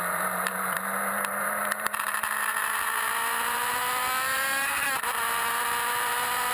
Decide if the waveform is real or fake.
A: fake